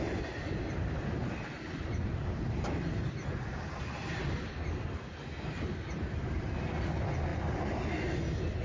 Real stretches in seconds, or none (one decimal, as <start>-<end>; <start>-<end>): 0.0-8.6